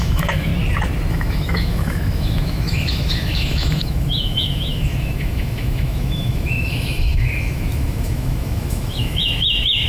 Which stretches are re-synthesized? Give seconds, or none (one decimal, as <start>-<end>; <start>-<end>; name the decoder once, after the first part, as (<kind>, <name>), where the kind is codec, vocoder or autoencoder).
0.0-0.5 (autoencoder, DAC-VAE); 1.1-9.9